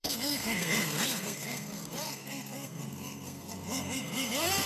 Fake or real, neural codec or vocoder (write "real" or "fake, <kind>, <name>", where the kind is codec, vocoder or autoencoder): fake, codec, SNAC